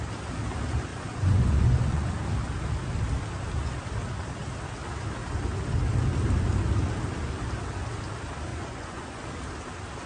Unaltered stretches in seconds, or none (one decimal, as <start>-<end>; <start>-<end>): 0.0-0.9; 2.1-8.5; 9.2-10.1